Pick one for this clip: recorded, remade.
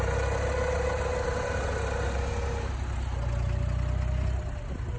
recorded